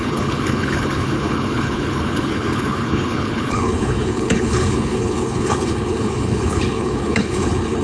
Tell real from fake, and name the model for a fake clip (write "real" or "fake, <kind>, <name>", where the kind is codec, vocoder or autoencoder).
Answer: fake, codec, HILCodec